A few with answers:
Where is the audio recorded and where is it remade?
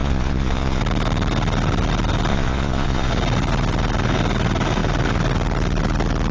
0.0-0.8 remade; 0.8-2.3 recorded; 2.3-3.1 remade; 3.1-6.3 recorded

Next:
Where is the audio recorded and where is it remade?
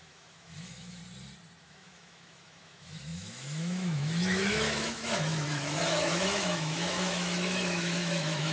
0.0-1.0 remade; 1.0-1.6 recorded; 1.6-8.5 remade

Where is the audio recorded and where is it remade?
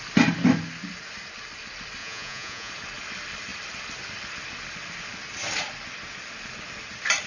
0.0-2.0 recorded; 2.0-2.7 remade; 2.7-7.3 recorded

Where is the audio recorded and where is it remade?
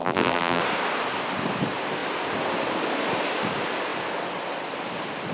0.0-0.6 remade; 0.6-5.3 recorded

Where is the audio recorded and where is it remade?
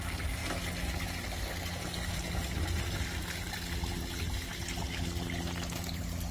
0.0-6.3 recorded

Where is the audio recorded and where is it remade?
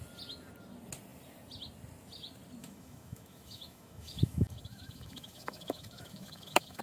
0.0-2.6 recorded; 2.6-6.8 remade